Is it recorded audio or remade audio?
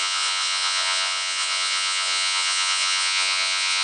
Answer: remade